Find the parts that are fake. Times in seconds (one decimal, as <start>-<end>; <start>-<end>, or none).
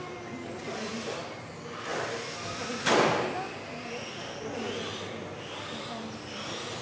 none